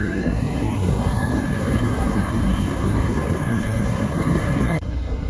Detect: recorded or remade remade